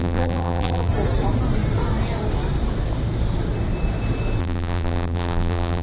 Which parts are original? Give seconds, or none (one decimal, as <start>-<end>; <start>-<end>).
0.9-4.4